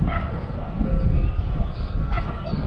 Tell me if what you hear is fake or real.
fake